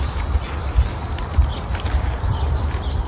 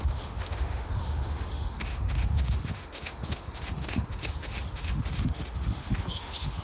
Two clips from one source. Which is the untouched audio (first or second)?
first